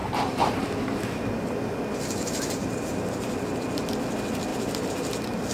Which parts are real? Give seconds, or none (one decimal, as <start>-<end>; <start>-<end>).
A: 0.6-2.6; 3.9-4.5; 5.1-5.5